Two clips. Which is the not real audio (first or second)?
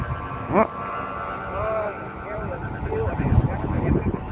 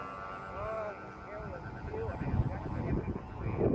first